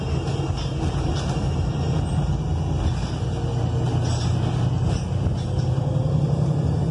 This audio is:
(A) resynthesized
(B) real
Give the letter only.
B